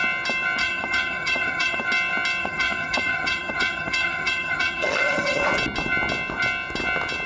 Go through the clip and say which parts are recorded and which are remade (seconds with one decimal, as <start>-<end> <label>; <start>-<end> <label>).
0.0-0.6 recorded; 0.6-1.8 remade; 1.8-2.4 recorded; 2.4-5.4 remade; 5.4-7.3 recorded